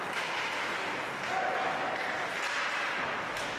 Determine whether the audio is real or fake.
real